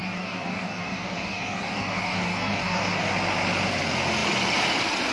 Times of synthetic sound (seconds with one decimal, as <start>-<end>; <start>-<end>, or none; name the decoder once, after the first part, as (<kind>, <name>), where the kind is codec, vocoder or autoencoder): 0.0-3.1 (codec, DAC)